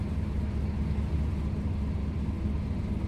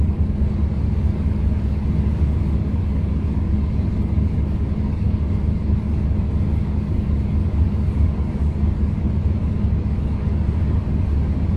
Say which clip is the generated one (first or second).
second